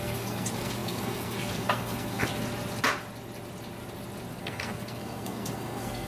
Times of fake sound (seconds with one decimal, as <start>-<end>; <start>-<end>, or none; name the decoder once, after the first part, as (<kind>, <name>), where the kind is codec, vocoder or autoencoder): 0.0-2.3 (codec, SNAC); 4.4-6.1